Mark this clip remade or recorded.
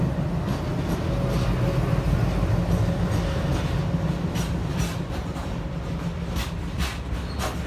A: recorded